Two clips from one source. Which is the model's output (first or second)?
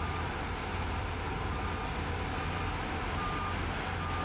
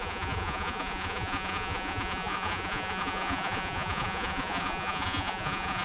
second